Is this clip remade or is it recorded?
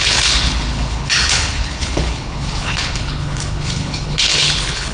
remade